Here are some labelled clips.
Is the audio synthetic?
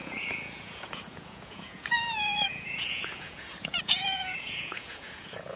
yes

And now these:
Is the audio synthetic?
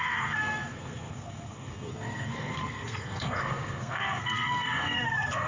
yes